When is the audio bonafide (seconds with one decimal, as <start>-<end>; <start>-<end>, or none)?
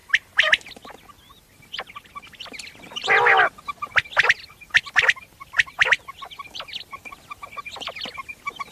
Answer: 0.0-8.7